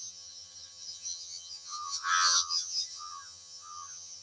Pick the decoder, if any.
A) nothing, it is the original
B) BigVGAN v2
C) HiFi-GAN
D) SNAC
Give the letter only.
C